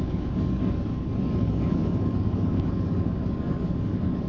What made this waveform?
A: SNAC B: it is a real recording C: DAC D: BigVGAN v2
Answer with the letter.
C